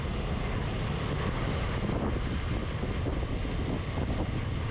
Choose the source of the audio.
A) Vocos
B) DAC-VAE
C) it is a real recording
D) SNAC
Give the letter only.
C